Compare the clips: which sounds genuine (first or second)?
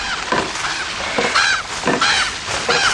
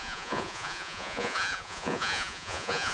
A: first